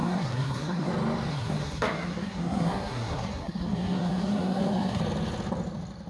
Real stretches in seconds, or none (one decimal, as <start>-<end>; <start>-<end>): 0.9-1.3; 5.0-6.1